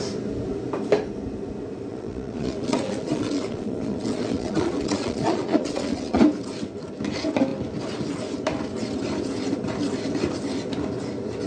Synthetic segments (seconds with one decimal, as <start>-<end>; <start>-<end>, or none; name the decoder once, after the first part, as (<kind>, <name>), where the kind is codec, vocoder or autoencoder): 1.9-6.2 (vocoder, Vocos)